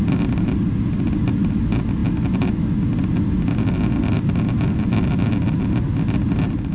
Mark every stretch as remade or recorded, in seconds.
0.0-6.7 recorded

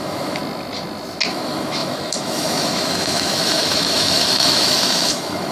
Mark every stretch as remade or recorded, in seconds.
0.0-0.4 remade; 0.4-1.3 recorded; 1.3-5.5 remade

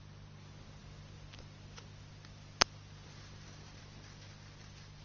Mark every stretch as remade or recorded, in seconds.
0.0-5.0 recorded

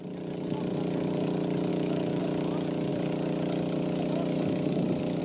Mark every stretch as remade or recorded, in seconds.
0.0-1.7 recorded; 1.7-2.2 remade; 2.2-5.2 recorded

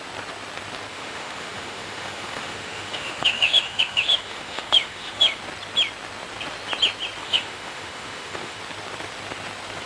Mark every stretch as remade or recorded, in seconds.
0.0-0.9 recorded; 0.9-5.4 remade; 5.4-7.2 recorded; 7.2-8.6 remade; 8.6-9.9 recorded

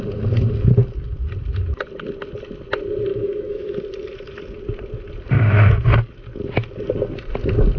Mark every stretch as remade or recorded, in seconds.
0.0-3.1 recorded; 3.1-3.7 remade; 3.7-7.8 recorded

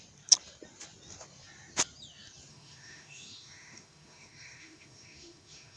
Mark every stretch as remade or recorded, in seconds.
0.0-2.5 recorded; 2.5-5.8 remade